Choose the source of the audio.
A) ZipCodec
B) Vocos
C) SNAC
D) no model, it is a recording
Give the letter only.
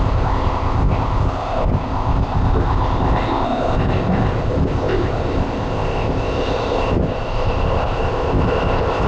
A